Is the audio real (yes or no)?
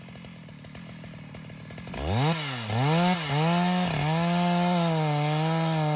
yes